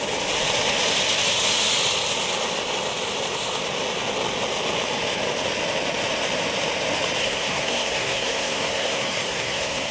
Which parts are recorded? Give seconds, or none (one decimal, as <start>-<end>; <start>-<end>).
0.0-7.2